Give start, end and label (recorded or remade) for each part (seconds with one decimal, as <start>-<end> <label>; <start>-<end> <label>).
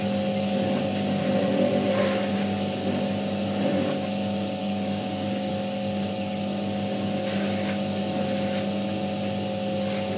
0.0-4.6 recorded; 4.6-5.5 remade; 5.5-10.2 recorded